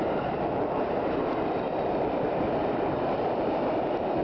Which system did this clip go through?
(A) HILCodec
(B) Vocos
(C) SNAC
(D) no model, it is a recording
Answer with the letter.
D